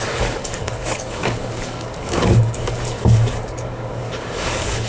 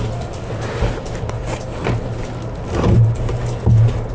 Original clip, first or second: second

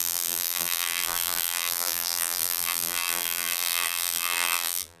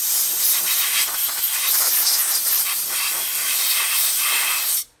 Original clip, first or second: second